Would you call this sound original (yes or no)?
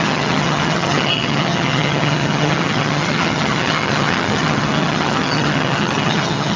no